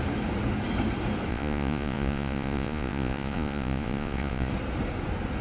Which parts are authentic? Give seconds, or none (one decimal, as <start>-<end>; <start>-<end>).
0.0-1.3; 4.5-5.4